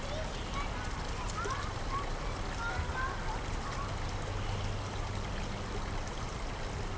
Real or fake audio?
real